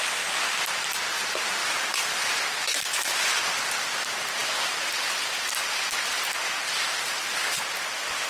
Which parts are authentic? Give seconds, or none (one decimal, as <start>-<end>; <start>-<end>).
0.0-1.6; 3.4-8.3